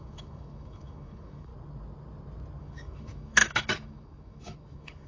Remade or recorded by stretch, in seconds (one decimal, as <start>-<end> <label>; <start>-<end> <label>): 0.0-1.5 remade; 1.5-2.6 recorded; 2.6-5.1 remade